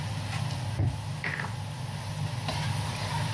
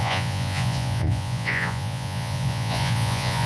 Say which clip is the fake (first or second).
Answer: second